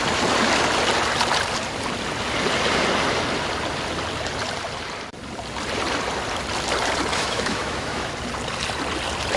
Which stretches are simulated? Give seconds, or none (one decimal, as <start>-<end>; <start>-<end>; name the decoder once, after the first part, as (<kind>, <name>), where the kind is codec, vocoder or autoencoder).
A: 7.1-8.1 (autoencoder, DAC-VAE)